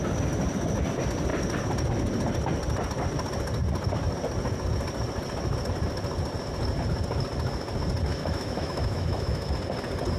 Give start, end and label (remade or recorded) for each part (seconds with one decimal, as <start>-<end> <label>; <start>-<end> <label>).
0.0-8.1 recorded; 8.1-9.5 remade; 9.5-10.2 recorded